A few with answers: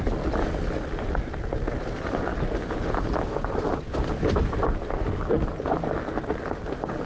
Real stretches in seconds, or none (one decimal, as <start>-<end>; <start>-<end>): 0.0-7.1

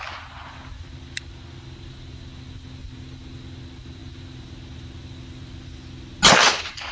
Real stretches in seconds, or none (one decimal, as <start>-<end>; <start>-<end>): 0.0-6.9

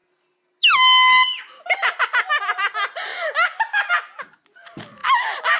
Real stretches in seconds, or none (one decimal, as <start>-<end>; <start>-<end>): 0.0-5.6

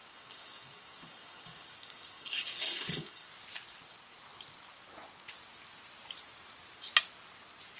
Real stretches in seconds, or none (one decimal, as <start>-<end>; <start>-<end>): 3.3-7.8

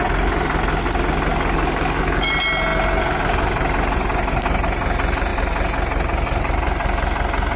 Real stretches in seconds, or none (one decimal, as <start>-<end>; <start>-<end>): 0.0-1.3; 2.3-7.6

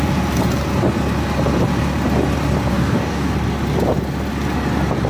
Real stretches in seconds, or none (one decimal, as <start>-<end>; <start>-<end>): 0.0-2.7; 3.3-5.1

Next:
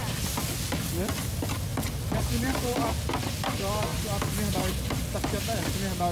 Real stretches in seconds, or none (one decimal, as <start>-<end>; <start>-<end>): 0.0-6.1